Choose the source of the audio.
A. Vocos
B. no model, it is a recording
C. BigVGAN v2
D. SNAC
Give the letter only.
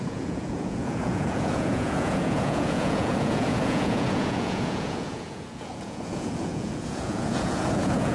A